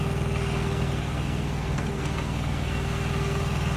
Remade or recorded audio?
remade